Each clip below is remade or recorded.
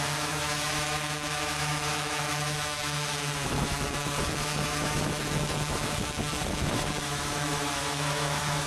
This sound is remade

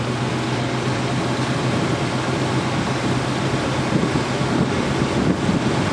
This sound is recorded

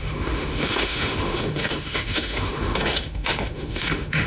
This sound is remade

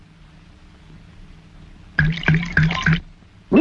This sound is recorded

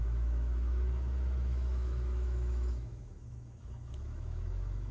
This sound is remade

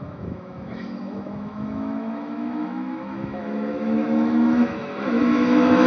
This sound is remade